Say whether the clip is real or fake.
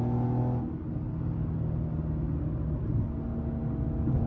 real